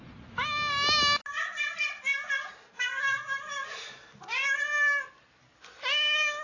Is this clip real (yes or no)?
yes